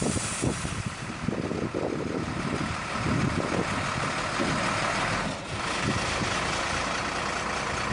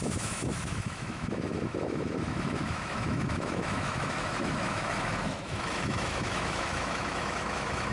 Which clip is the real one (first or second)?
first